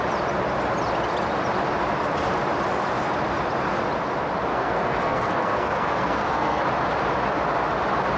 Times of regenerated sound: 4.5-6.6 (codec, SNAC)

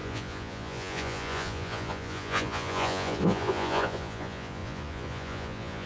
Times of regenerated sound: 0.0-5.9 (vocoder, Vocos)